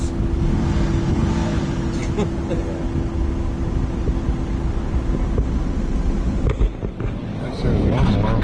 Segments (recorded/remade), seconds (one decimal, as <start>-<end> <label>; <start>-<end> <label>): 0.0-8.4 recorded